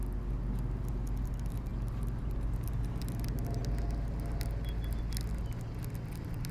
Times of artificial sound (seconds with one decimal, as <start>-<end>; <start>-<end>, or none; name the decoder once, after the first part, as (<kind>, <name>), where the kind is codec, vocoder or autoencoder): none